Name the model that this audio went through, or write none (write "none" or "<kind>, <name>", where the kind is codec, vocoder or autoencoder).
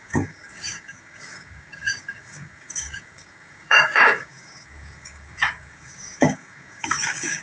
codec, DAC